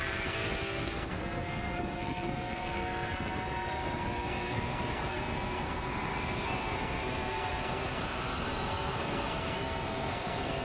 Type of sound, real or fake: fake